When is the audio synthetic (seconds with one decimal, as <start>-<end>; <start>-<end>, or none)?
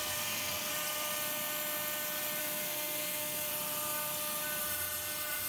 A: 0.0-0.7; 2.4-3.5